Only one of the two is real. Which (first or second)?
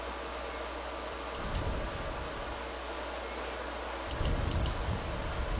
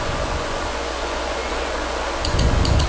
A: first